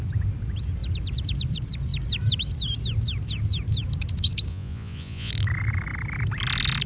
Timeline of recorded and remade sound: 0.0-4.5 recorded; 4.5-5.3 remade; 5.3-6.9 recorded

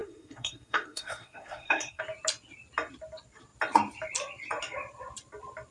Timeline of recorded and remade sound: 0.0-2.0 remade; 2.0-5.7 recorded

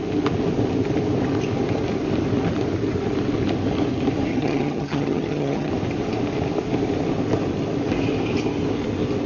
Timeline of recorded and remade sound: 0.0-4.3 recorded; 4.3-5.7 remade; 5.7-9.3 recorded

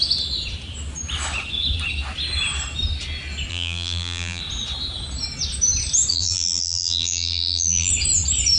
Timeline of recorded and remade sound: 0.0-3.5 recorded; 3.5-4.4 remade; 4.4-6.1 recorded; 6.1-7.9 remade; 7.9-8.6 recorded

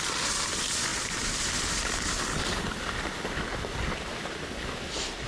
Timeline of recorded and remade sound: 0.0-5.3 recorded

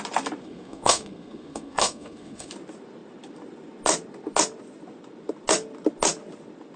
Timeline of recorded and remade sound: 0.0-0.4 recorded; 0.4-2.5 remade; 2.5-6.8 recorded